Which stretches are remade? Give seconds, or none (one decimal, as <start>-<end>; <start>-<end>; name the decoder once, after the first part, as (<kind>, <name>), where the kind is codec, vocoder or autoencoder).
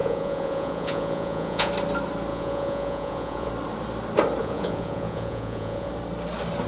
0.0-1.7 (vocoder, Vocos); 2.3-3.5; 4.4-5.9